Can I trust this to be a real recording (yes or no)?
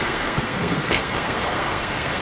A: no